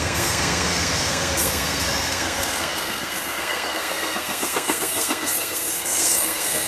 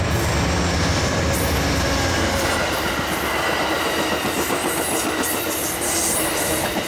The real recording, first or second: second